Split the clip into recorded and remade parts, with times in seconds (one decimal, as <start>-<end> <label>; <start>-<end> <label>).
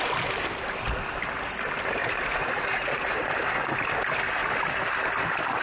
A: 0.0-2.0 recorded; 2.0-3.5 remade; 3.5-4.4 recorded; 4.4-5.1 remade; 5.1-5.6 recorded